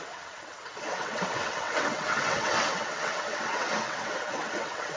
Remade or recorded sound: remade